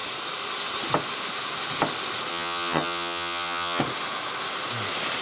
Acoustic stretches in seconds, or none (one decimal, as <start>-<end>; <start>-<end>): 0.0-2.3; 3.8-5.2

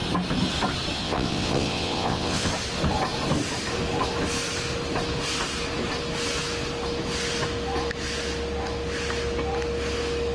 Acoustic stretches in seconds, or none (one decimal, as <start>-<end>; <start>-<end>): 0.0-1.0; 2.5-10.3